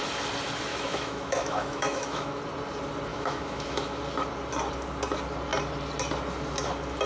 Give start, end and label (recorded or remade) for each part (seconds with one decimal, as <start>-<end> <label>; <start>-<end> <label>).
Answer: 0.0-0.7 recorded; 0.7-2.4 remade; 2.4-3.1 recorded; 3.1-4.0 remade; 4.0-7.1 recorded